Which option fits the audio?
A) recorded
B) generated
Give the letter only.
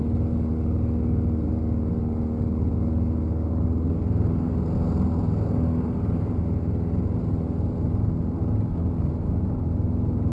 A